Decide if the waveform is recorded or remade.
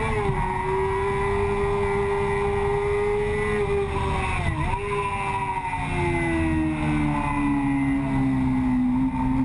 recorded